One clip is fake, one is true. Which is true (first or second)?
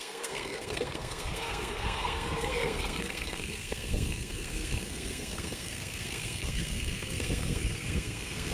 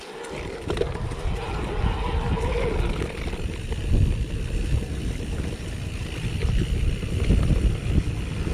second